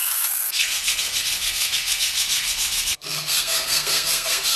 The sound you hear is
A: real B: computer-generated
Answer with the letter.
B